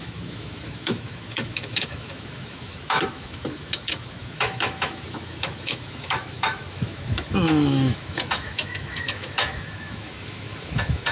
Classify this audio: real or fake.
fake